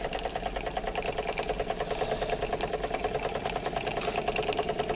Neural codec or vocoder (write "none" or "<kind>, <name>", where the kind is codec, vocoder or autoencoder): none